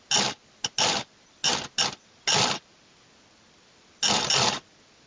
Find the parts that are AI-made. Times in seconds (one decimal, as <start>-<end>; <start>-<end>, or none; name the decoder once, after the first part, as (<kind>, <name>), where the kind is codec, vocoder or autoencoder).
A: none